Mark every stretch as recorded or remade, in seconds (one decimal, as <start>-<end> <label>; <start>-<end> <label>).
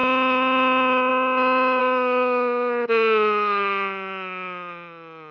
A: 0.0-1.8 recorded; 1.8-5.3 remade